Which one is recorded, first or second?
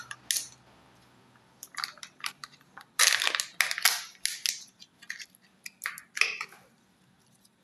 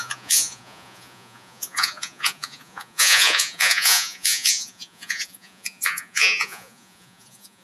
first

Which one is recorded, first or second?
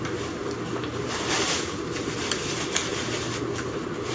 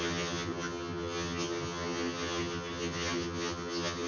first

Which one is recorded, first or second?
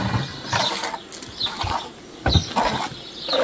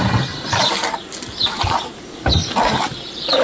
first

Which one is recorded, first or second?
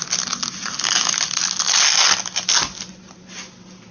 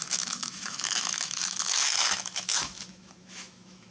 first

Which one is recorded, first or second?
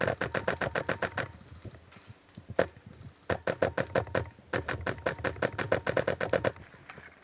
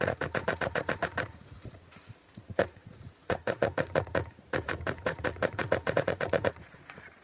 first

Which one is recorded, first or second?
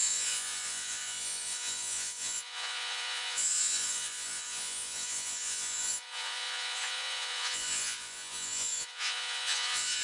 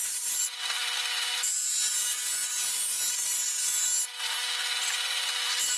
second